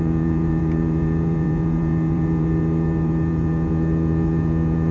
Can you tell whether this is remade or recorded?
remade